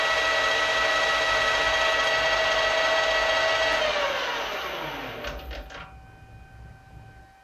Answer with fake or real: real